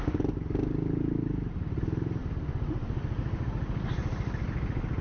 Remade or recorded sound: recorded